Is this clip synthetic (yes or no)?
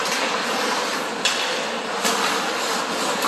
no